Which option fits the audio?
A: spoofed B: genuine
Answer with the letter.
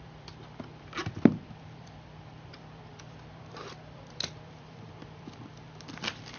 A